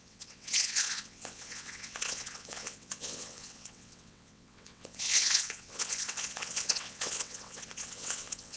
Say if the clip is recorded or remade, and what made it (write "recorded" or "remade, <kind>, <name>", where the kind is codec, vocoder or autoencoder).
remade, vocoder, WaveNeXt